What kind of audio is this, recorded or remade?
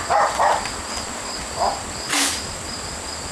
recorded